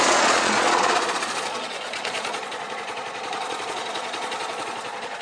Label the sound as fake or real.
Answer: fake